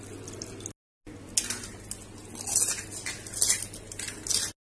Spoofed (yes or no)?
no